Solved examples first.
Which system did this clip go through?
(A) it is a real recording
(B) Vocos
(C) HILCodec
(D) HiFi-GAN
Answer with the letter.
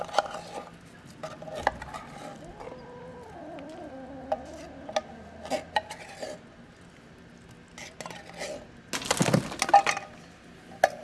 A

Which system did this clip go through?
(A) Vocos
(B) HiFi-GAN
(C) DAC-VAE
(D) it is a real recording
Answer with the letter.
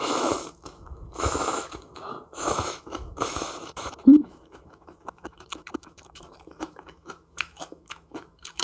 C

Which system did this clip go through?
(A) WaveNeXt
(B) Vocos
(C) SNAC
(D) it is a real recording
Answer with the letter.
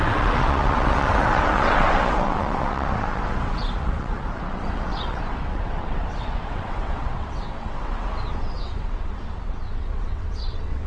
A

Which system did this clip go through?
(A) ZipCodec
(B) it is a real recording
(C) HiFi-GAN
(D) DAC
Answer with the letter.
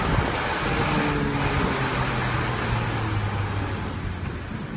B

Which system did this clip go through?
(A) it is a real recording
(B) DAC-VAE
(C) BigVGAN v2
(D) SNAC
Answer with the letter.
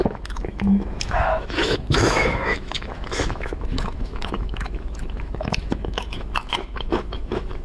B